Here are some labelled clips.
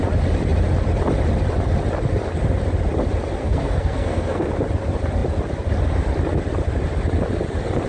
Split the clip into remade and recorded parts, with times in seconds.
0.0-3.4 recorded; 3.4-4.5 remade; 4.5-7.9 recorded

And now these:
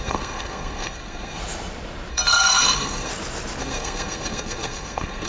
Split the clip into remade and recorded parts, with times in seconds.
0.0-1.4 remade; 1.4-2.1 recorded; 2.1-3.1 remade; 3.1-3.6 recorded; 3.6-5.3 remade